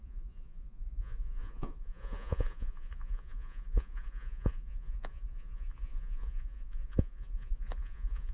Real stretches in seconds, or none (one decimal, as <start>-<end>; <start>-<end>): none